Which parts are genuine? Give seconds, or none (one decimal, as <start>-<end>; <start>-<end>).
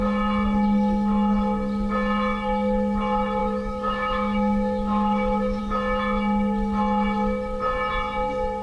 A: 0.0-3.4; 5.6-8.6